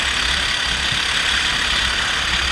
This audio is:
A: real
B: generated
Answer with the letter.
A